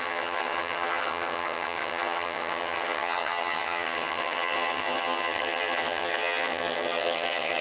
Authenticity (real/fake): fake